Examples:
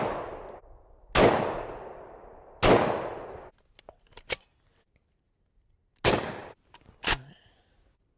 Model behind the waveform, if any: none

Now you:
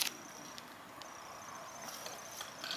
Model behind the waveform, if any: none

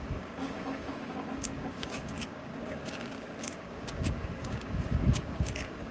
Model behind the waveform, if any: codec, DAC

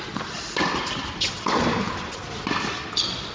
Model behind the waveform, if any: none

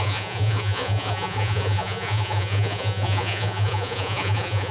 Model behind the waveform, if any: vocoder, Vocos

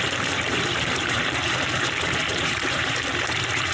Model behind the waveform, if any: vocoder, BigVGAN v2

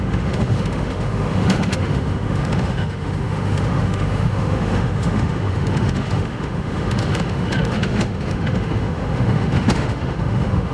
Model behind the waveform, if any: autoencoder, DAC-VAE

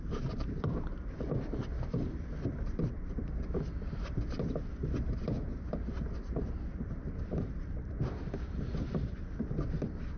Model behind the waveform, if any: vocoder, BigVGAN v2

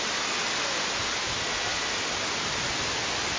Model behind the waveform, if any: none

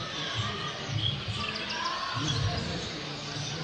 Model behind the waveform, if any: none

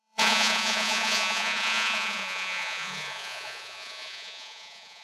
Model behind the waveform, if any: vocoder, Vocos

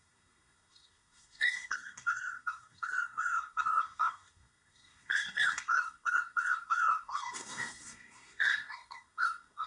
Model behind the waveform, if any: codec, SNAC